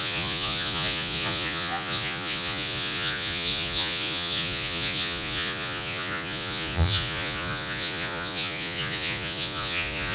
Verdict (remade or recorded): remade